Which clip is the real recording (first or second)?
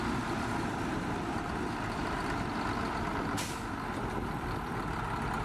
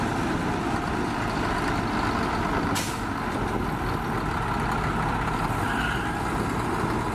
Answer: second